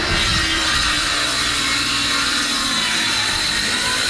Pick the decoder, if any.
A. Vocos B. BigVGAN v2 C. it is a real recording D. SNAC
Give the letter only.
B